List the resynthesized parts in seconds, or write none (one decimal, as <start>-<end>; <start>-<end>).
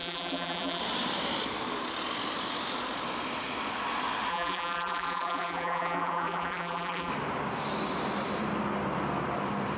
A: 0.0-0.8; 4.3-7.1